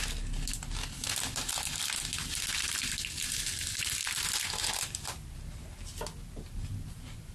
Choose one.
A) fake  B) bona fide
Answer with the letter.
B